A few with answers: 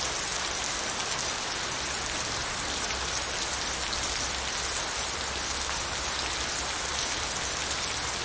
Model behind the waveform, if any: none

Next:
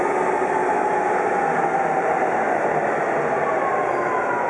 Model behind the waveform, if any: none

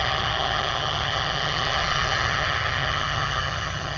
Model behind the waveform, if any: vocoder, HiFi-GAN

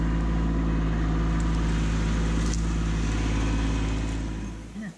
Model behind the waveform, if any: none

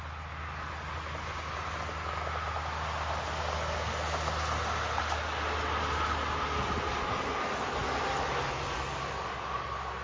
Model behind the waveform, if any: none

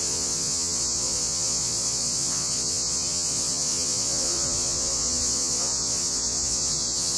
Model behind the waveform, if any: vocoder, Vocos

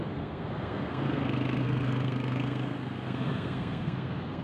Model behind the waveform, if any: codec, SNAC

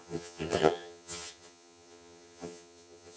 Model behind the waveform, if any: vocoder, HiFi-GAN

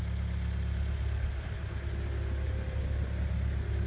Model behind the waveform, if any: none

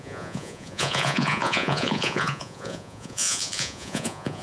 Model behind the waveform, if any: vocoder, Vocos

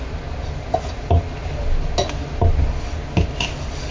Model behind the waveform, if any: none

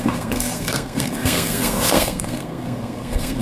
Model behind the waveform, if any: codec, SNAC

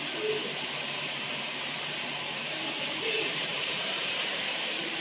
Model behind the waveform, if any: vocoder, BigVGAN v2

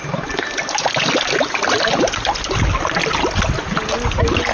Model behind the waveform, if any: none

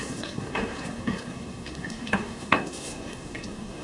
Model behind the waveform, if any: codec, SNAC